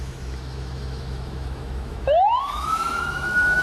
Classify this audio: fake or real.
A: fake